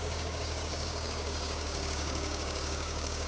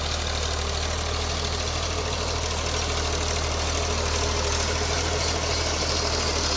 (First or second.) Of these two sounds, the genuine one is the second